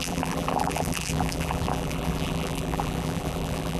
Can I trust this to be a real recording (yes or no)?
no